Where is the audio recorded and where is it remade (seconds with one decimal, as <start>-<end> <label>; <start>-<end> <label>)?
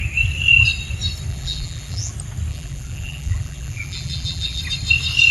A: 0.0-1.3 recorded; 1.3-2.1 remade; 2.1-2.5 recorded; 2.5-4.6 remade; 4.6-5.3 recorded